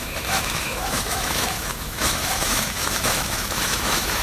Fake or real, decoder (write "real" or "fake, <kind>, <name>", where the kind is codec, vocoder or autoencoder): fake, autoencoder, DAC-VAE